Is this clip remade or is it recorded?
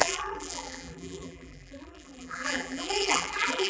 remade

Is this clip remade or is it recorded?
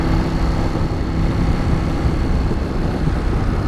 recorded